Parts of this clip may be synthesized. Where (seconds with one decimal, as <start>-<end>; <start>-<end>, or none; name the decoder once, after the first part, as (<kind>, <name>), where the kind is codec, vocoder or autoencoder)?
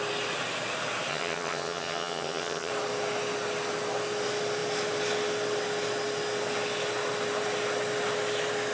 1.1-2.7 (vocoder, HiFi-GAN)